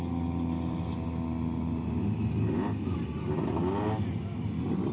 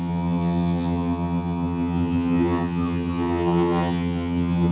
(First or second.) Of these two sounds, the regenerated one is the second